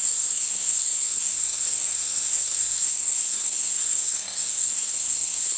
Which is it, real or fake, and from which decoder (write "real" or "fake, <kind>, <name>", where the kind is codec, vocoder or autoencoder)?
fake, codec, SNAC